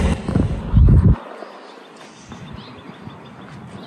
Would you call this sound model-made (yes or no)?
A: no